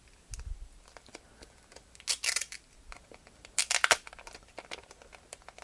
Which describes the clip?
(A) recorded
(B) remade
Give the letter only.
A